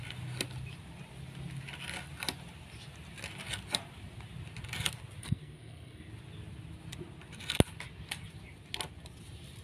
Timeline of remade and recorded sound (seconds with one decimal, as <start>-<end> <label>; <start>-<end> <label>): 0.0-5.2 recorded; 5.2-6.1 remade; 6.1-9.6 recorded